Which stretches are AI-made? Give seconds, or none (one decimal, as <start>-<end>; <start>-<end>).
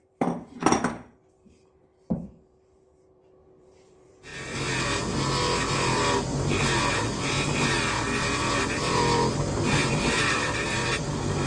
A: 0.0-4.3; 8.5-11.5